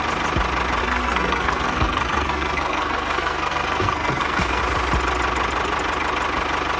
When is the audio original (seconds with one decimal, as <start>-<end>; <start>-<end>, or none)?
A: 0.0-0.8; 4.6-6.8